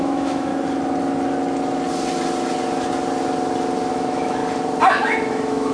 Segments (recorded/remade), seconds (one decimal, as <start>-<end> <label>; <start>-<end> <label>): 0.0-0.5 remade; 0.5-3.9 recorded; 3.9-4.4 remade; 4.4-5.0 recorded; 5.0-5.7 remade